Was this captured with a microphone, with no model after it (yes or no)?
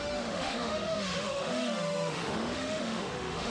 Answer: no